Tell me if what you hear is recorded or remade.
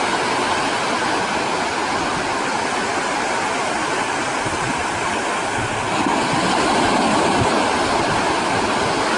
recorded